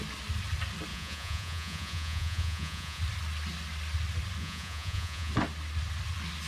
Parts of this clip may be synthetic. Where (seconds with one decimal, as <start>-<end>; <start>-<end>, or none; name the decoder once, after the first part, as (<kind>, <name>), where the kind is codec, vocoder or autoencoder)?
0.9-3.0 (vocoder, Vocos); 4.4-5.3